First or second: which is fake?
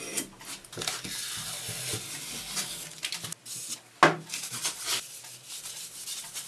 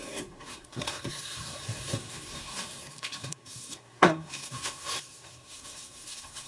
second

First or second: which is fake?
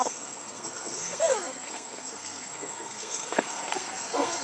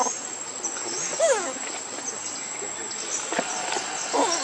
first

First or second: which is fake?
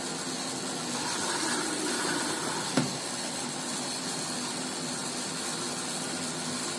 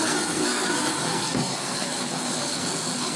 second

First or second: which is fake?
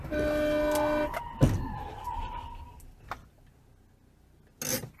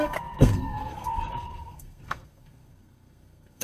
second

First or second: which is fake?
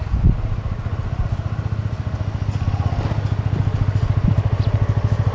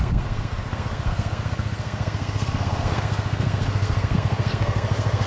second